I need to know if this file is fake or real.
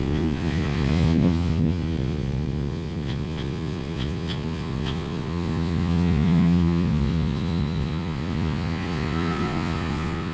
fake